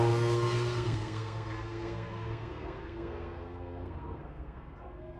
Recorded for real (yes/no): no